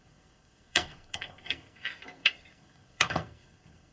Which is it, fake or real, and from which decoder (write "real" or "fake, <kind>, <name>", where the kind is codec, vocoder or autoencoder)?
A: fake, codec, SNAC